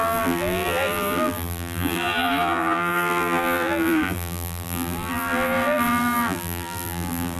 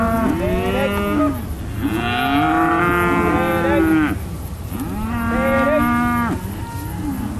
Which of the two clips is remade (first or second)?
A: first